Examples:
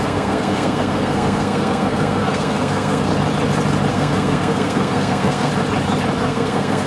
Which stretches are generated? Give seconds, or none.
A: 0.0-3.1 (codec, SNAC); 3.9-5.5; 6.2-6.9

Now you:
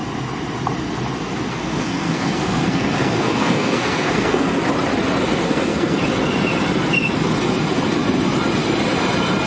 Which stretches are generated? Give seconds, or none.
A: 1.5-4.6 (codec, SNAC); 5.4-6.0

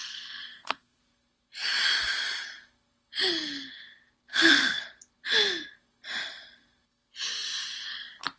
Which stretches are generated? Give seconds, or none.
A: 0.0-1.0 (codec, SNAC); 4.3-4.8

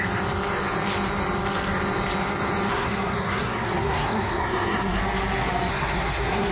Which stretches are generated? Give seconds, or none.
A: 2.7-5.0 (codec, SNAC); 5.7-6.5

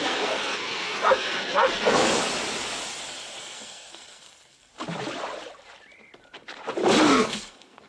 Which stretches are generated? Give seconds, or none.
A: 0.0-2.3 (codec, SNAC); 3.4-4.7; 7.1-7.9

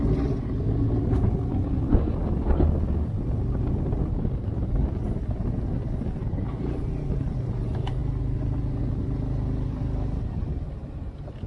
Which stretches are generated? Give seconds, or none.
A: none